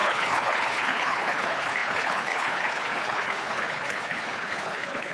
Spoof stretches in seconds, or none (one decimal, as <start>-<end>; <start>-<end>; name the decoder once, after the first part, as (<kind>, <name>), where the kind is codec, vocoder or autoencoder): 0.0-5.1 (codec, HILCodec)